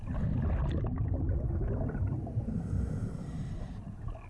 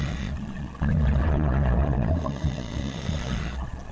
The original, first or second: first